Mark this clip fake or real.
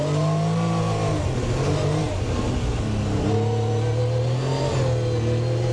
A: real